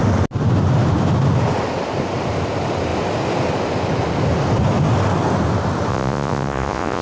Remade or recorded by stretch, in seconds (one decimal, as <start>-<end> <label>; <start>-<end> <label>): 0.0-5.9 recorded; 5.9-7.0 remade